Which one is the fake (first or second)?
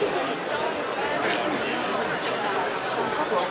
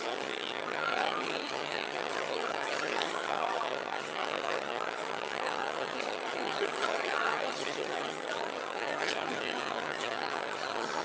second